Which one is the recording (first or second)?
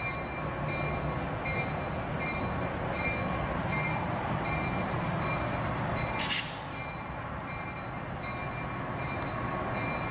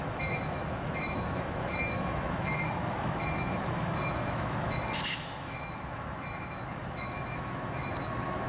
first